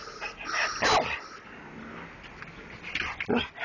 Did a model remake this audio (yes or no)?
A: no